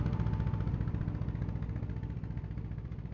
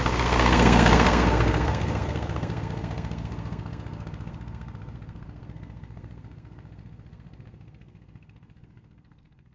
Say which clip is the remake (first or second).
second